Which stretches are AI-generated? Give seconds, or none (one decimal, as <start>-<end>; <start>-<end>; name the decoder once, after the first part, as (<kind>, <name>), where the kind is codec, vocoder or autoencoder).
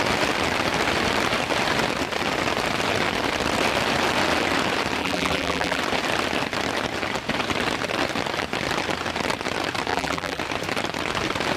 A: 5.0-5.8 (vocoder, BigVGAN v2); 9.9-10.4